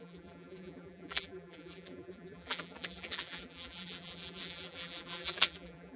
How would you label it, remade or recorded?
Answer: remade